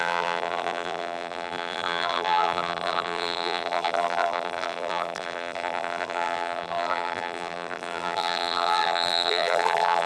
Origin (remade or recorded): remade